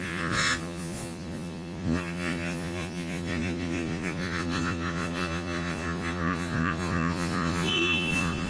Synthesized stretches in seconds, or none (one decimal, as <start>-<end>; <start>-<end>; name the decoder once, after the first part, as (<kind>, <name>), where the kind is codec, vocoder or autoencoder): 0.0-8.5 (vocoder, Vocos)